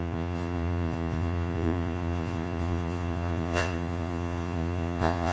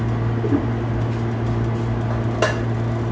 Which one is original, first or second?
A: second